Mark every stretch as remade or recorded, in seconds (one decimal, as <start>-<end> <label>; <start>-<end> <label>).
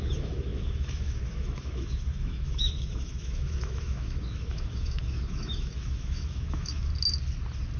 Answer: 0.0-6.9 remade; 6.9-7.8 recorded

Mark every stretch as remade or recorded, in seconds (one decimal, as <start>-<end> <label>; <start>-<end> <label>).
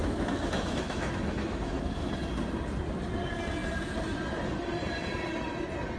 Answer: 0.0-2.1 remade; 2.1-6.0 recorded